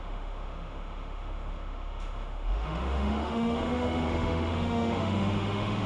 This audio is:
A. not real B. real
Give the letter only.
A